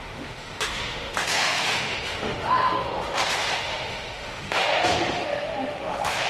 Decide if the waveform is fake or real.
fake